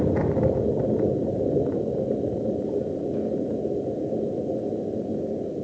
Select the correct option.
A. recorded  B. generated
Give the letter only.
A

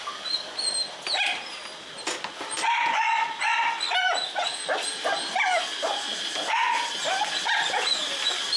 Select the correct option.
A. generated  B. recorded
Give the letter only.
B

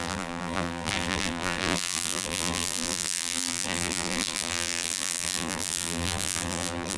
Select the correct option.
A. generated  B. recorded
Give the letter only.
A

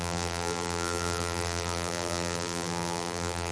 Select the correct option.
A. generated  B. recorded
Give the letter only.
A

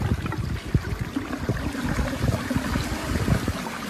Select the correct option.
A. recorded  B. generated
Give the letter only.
A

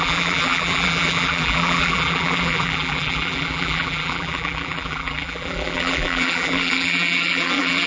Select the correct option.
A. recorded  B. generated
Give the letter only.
B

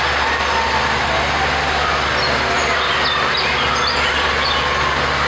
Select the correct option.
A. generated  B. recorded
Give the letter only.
B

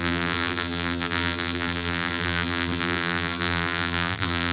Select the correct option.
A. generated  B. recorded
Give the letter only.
A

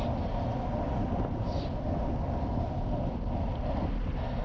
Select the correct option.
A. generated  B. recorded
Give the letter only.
B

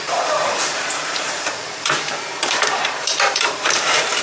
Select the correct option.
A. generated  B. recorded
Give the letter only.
A